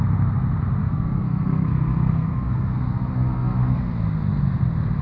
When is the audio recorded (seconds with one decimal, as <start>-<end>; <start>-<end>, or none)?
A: 0.0-0.8; 3.8-5.0